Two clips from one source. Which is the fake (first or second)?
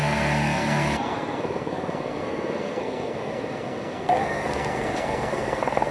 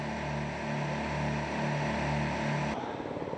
first